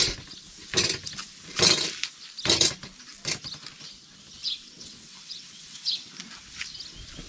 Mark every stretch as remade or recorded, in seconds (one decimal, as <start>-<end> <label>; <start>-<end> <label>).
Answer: 0.0-4.4 recorded; 4.4-6.1 remade; 6.1-7.3 recorded